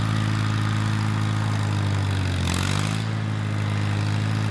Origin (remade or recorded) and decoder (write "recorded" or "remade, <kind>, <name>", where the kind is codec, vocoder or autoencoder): recorded